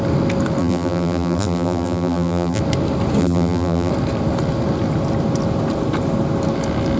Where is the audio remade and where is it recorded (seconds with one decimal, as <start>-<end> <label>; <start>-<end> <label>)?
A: 0.0-0.6 recorded; 0.6-2.6 remade; 2.6-3.2 recorded; 3.2-3.9 remade; 3.9-7.0 recorded